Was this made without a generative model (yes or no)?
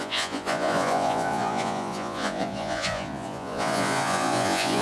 no